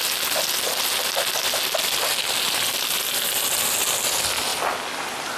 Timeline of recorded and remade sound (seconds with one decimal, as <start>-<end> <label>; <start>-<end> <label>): 0.0-5.4 recorded